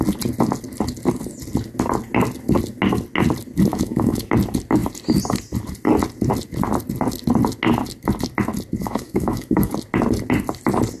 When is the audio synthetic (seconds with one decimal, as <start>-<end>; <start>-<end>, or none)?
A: 3.7-4.3; 8.8-9.7